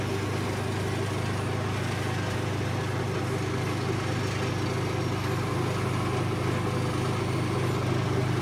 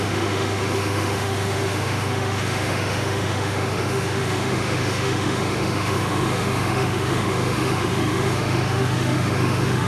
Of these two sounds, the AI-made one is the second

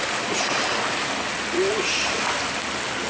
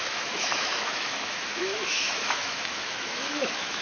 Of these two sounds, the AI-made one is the second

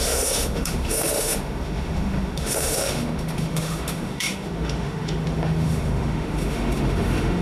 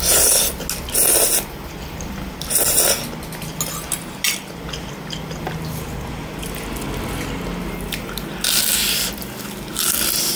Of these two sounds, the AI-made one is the first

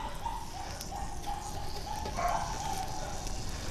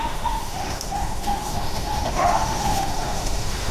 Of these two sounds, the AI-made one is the second